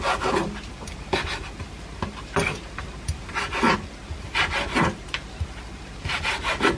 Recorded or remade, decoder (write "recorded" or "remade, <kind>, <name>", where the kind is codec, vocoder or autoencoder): recorded